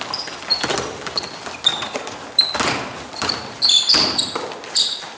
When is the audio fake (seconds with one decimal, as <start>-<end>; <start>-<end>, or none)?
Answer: 1.7-2.2